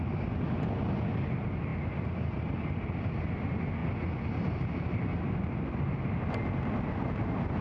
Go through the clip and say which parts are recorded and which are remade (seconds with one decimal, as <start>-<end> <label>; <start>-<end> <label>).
0.0-1.7 recorded; 1.7-3.2 remade; 3.2-3.8 recorded; 3.8-6.3 remade; 6.3-7.6 recorded